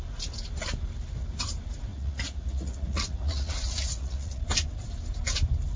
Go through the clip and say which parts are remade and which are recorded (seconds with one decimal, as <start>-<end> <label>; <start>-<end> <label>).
0.0-1.9 recorded; 1.9-4.4 remade; 4.4-5.8 recorded